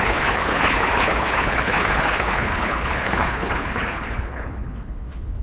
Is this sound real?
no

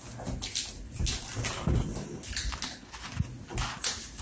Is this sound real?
yes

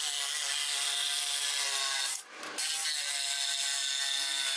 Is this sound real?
yes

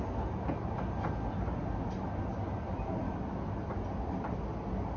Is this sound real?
yes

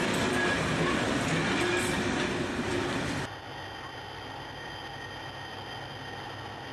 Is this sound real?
yes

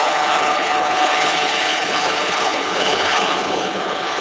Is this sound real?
no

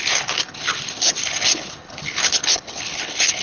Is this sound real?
no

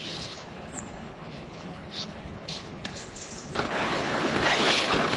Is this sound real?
no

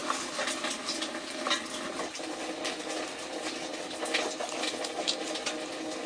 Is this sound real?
yes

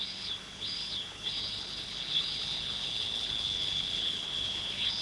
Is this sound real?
no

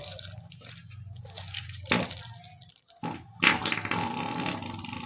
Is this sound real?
yes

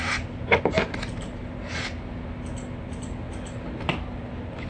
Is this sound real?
yes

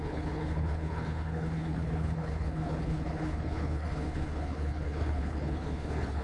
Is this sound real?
no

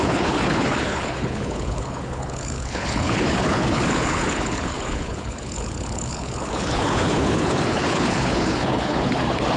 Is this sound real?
no